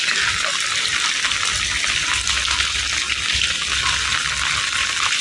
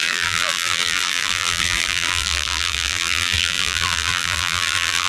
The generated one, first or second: second